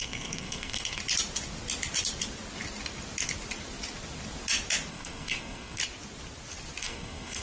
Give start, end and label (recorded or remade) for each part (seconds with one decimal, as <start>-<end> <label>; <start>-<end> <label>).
0.0-1.0 remade; 1.0-4.9 recorded; 4.9-5.8 remade; 5.8-6.8 recorded; 6.8-7.4 remade